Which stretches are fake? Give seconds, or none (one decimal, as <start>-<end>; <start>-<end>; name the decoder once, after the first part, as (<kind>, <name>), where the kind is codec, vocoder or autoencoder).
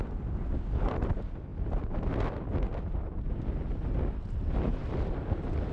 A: none